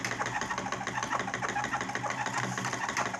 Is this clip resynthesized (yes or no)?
no